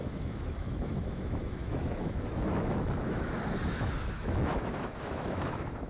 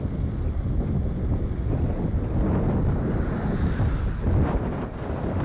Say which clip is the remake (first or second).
first